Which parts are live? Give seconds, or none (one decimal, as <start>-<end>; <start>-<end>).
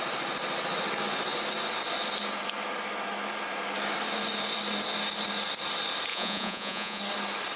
0.0-6.1; 7.0-7.6